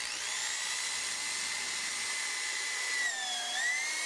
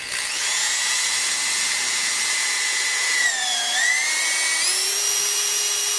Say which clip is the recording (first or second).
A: first